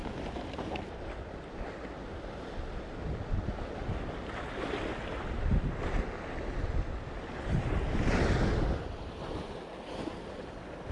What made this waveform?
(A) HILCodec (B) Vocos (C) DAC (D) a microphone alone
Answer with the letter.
D